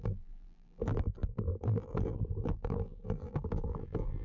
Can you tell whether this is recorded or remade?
remade